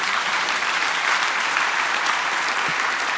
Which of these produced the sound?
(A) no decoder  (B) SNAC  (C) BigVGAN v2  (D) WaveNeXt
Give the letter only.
C